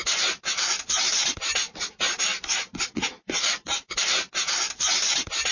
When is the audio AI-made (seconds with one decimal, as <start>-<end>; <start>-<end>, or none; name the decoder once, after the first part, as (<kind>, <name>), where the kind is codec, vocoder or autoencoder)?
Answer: 0.0-5.5 (vocoder, BigVGAN v2)